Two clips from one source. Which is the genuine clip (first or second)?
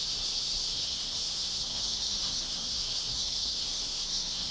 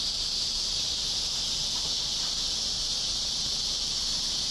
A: second